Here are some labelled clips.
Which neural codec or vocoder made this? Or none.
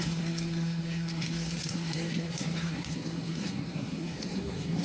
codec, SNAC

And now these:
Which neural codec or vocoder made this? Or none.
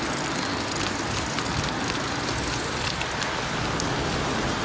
none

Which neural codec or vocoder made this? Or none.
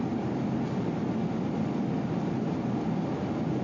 none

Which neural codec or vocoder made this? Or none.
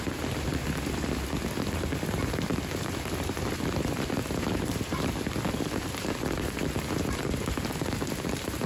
vocoder, BigVGAN v2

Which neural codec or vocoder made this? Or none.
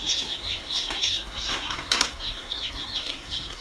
codec, SNAC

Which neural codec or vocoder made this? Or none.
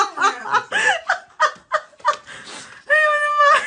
none